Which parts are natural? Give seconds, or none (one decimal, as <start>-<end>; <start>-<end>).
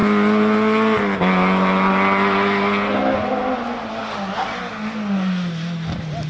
0.0-6.3